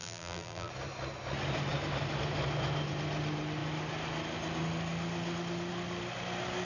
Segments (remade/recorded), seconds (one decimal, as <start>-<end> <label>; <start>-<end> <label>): 0.0-0.7 remade; 0.7-6.7 recorded